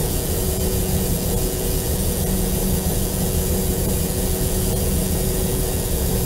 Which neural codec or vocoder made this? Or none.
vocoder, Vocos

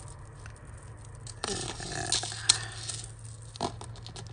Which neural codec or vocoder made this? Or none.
none